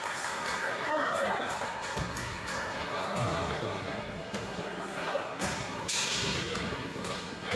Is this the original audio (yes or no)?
no